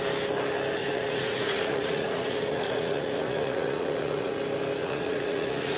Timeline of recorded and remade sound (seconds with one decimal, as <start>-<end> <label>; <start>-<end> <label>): 0.0-0.8 recorded; 0.8-4.3 remade; 4.3-4.8 recorded; 4.8-5.8 remade